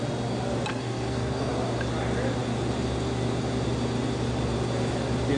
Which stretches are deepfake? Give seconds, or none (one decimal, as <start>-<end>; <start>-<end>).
0.7-1.5